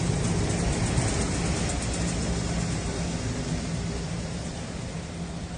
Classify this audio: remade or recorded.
recorded